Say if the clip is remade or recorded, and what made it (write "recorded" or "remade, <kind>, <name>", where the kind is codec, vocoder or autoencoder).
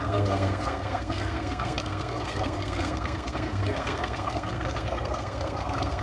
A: remade, codec, SNAC